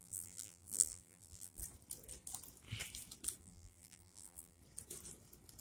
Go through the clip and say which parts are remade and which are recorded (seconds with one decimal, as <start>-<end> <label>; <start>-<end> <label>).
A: 0.0-1.6 remade; 1.6-3.4 recorded; 3.4-4.6 remade; 4.6-5.6 recorded